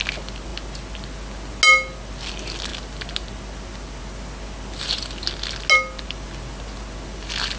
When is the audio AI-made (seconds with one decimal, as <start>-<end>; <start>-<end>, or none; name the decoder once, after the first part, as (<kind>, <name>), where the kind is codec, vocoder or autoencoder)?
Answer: none